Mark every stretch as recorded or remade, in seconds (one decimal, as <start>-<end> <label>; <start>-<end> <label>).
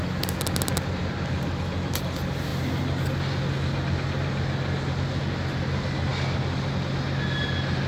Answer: 0.0-7.9 recorded